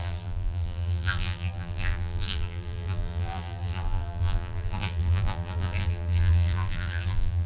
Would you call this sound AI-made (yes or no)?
yes